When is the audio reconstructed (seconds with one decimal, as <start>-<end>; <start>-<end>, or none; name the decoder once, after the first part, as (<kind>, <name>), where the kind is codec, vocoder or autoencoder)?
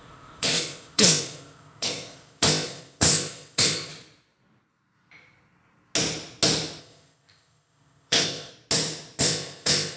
0.0-3.9 (codec, ZipCodec); 6.8-8.5; 9.2-10.0